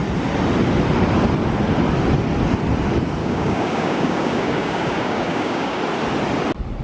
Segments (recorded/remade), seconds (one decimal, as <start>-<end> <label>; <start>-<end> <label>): 0.0-3.2 recorded; 3.2-5.8 remade; 5.8-6.8 recorded